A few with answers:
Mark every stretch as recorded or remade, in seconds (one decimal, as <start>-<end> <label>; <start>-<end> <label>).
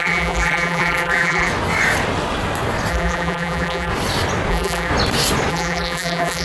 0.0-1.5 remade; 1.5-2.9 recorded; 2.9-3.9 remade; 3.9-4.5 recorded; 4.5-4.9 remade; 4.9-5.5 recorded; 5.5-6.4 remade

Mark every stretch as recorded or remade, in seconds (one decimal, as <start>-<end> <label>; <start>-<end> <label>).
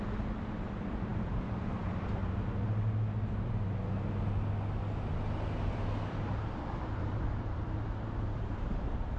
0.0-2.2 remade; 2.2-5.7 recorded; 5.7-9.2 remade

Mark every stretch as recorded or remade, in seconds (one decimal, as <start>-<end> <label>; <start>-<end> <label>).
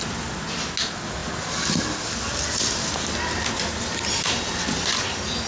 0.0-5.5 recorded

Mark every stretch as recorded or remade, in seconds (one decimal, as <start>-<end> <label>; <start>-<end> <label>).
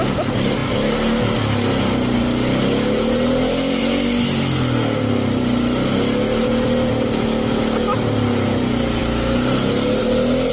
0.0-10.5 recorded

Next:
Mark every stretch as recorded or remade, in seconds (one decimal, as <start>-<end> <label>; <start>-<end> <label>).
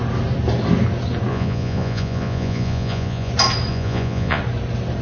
0.0-1.3 recorded; 1.3-3.3 remade; 3.3-3.7 recorded; 3.7-4.4 remade; 4.4-5.0 recorded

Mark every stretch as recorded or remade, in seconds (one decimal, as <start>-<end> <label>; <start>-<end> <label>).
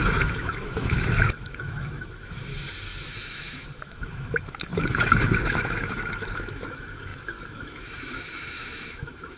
0.0-2.5 remade; 2.5-3.1 recorded; 3.1-9.4 remade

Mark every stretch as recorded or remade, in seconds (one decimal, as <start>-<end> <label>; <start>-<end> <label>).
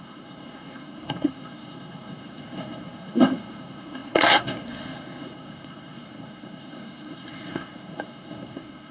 0.0-8.9 remade